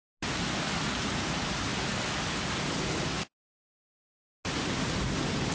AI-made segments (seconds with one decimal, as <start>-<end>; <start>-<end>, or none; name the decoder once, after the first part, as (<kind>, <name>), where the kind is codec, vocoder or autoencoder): 0.8-1.7 (vocoder, BigVGAN v2); 5.0-5.5